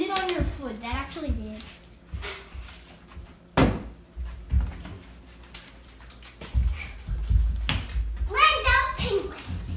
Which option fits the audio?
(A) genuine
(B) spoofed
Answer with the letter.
A